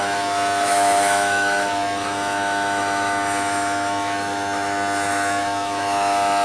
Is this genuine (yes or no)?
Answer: no